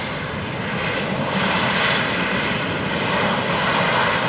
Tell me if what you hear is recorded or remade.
recorded